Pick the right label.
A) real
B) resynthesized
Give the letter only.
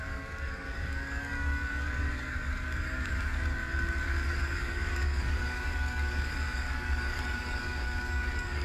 B